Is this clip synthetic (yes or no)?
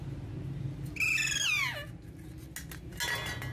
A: no